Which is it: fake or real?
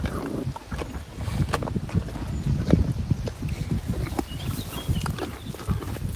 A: real